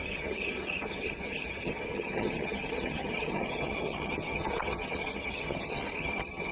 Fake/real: fake